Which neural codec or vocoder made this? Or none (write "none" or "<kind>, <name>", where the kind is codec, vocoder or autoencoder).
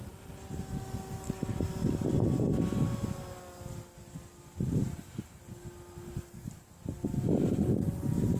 vocoder, BigVGAN v2